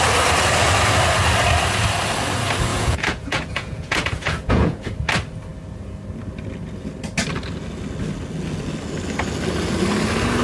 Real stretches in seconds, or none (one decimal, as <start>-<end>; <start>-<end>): 0.0-2.7; 4.9-10.4